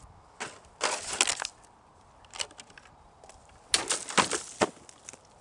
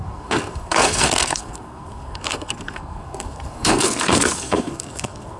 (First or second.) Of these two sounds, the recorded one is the first